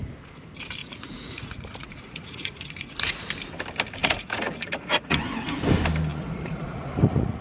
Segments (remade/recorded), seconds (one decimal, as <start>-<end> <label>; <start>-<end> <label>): 0.0-0.8 recorded; 0.8-3.3 remade; 3.3-4.0 recorded; 4.0-5.2 remade; 5.2-6.1 recorded; 6.1-7.4 remade